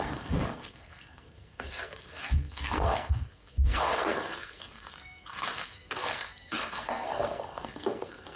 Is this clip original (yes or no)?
no